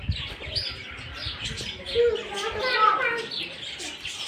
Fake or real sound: real